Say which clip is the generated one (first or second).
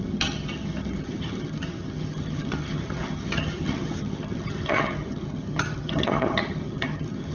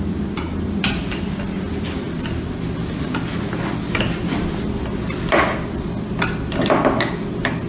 first